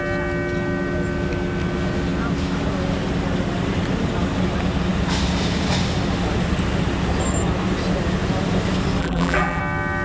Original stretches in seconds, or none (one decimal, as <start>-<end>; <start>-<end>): 0.0-9.0; 9.6-10.0